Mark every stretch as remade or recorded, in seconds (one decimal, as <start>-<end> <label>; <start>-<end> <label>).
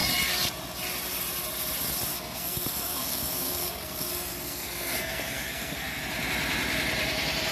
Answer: 0.0-2.1 recorded; 2.1-6.0 remade; 6.0-7.5 recorded